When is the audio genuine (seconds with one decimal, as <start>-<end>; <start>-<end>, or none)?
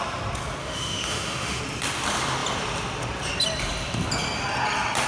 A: 0.0-0.6; 1.6-5.1